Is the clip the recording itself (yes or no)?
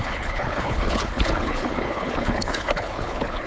no